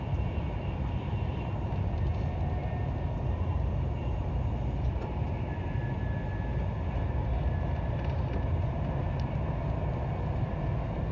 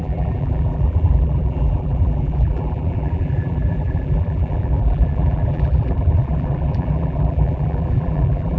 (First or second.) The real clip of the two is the first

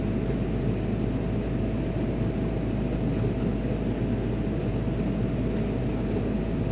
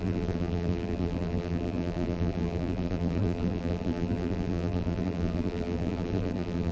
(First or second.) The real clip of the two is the first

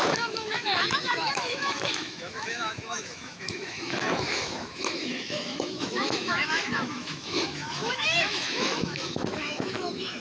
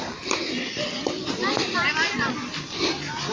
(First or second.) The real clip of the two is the second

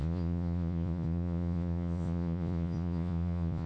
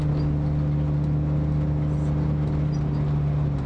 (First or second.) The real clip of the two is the second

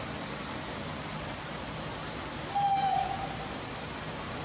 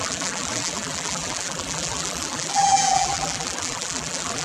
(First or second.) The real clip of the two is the first